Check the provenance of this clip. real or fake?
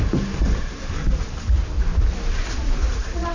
fake